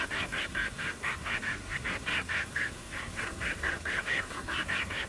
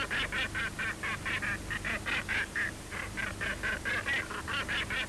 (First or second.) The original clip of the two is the second